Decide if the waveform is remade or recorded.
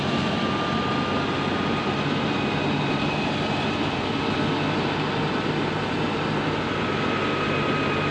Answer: recorded